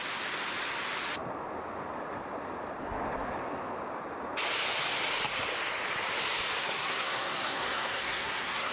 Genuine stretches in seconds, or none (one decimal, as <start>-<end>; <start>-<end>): 0.0-6.6